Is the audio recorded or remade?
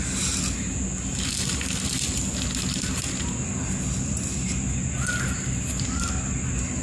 recorded